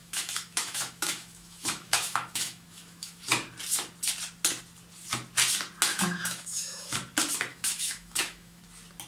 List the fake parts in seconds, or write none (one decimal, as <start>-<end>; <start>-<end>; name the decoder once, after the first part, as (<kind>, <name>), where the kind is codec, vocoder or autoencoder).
0.0-3.2 (autoencoder, DAC-VAE); 5.9-6.9; 7.5-8.6